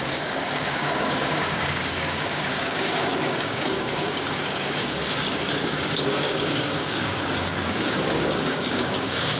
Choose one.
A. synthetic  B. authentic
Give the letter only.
A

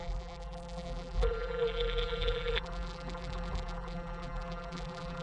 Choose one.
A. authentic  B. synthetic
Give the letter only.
B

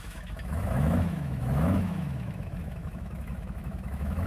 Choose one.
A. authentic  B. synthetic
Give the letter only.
B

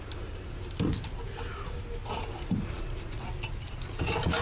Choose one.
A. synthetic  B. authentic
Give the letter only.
B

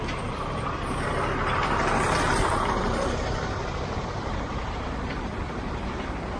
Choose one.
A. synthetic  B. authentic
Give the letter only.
A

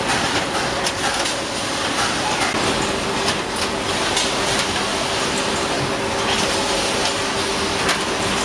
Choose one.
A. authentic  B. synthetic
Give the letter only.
A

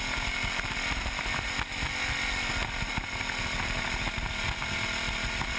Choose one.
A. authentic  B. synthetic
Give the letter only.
A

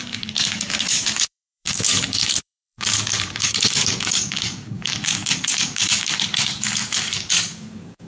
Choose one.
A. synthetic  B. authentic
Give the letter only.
A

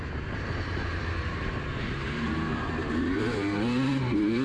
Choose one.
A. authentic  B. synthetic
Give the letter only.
B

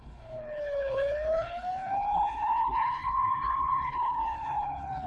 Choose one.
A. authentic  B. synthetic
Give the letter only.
B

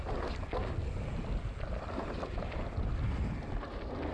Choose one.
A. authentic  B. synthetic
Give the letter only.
A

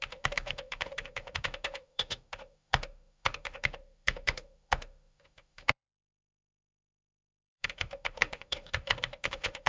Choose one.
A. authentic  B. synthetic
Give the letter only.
B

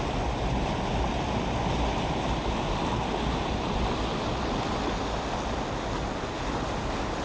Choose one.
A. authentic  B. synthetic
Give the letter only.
A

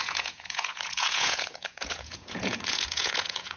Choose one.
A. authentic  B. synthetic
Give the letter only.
B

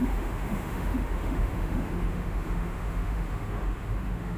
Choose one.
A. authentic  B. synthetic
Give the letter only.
B